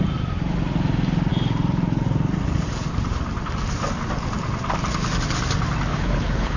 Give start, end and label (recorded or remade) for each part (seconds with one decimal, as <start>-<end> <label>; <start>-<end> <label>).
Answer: 0.0-5.9 recorded; 5.9-6.6 remade